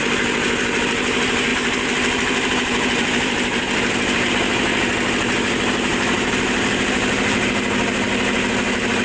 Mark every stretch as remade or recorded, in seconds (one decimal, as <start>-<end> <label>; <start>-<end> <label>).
0.0-1.5 recorded; 1.5-4.3 remade; 4.3-5.9 recorded; 5.9-7.5 remade; 7.5-9.0 recorded